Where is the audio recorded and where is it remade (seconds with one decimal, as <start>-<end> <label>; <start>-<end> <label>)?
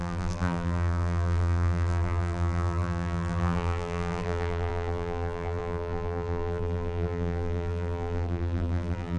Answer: 0.0-9.2 remade